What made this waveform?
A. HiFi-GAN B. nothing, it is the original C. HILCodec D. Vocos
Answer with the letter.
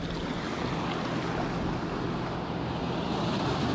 B